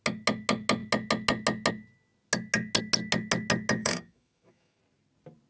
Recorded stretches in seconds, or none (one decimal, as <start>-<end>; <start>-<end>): 0.0-3.8; 4.8-5.5